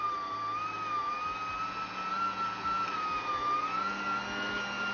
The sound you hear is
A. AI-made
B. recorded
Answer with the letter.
B